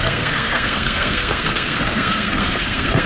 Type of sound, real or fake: fake